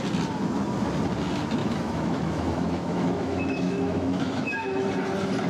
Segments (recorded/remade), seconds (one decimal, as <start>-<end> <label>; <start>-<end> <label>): 0.0-1.6 recorded; 1.6-4.9 remade; 4.9-5.5 recorded